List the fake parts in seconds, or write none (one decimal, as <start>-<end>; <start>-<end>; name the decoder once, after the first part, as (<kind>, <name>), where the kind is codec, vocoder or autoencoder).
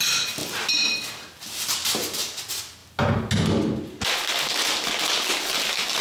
none